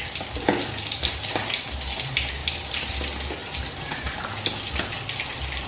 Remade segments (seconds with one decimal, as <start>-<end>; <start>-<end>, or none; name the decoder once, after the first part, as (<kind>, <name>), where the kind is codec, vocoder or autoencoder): 2.4-2.9 (vocoder, BigVGAN v2)